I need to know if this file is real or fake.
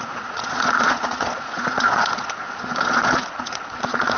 fake